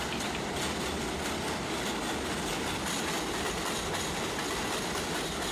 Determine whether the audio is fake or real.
real